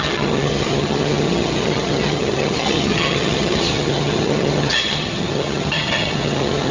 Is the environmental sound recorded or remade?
remade